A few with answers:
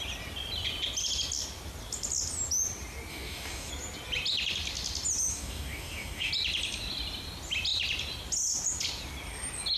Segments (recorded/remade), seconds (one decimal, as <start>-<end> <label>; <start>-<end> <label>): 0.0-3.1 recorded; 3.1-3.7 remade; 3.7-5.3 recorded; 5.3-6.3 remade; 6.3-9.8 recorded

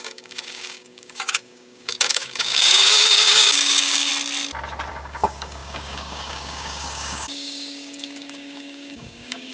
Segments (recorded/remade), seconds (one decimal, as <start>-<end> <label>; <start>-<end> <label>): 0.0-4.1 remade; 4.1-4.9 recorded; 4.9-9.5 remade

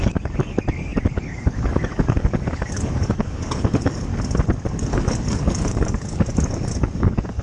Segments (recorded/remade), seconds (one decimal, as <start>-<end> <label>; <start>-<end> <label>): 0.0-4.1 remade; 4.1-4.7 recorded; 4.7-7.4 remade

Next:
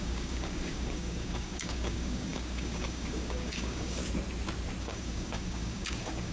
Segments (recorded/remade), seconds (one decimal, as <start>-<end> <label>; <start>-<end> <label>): 0.0-4.0 remade; 4.0-4.8 recorded; 4.8-6.3 remade

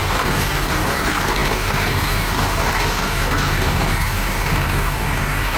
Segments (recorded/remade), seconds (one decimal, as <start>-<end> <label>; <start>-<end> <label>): 0.0-5.6 remade

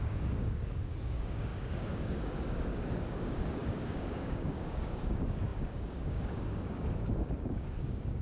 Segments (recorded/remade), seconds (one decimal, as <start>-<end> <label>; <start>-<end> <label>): 0.0-8.2 remade

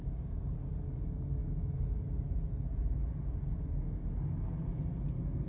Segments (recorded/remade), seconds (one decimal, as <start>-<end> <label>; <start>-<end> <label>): 0.0-5.5 recorded